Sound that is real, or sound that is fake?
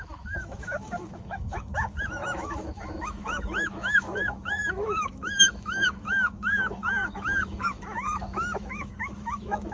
fake